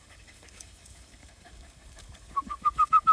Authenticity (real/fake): fake